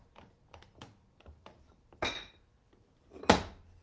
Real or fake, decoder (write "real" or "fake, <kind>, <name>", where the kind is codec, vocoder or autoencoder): real